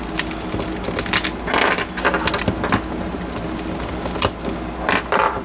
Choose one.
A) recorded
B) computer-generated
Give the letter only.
A